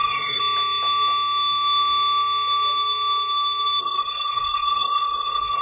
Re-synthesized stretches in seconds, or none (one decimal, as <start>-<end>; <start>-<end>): 0.0-0.4; 3.8-5.6